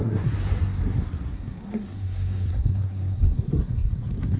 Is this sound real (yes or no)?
no